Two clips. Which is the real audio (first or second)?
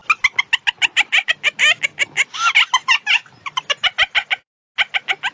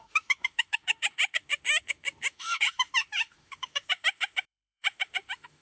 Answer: first